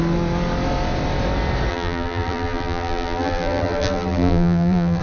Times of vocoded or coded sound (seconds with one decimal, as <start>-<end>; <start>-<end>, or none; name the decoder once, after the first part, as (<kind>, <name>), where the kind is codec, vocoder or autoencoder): 1.7-5.0 (vocoder, BigVGAN v2)